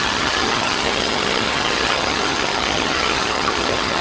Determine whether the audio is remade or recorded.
remade